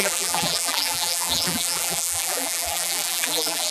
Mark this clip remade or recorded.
remade